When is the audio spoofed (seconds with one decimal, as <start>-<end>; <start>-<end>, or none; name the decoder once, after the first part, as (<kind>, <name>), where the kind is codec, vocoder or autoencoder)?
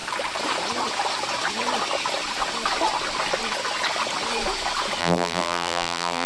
5.0-6.3 (vocoder, BigVGAN v2)